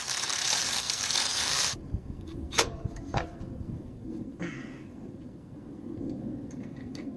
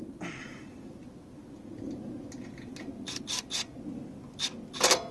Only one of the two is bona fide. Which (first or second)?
second